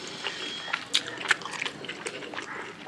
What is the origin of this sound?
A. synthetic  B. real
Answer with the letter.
B